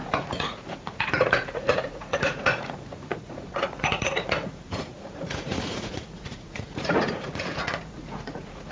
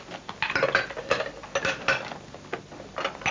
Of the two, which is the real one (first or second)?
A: second